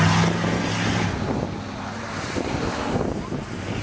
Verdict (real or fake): real